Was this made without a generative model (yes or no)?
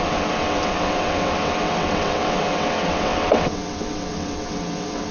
no